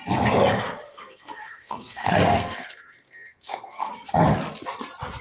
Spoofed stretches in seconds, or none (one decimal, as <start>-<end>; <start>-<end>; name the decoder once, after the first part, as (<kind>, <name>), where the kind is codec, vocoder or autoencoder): 0.9-3.9 (codec, SNAC)